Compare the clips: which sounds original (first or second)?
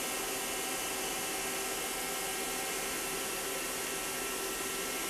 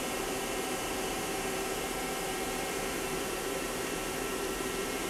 first